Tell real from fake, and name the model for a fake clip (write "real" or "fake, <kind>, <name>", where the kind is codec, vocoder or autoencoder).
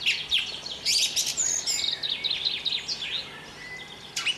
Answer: real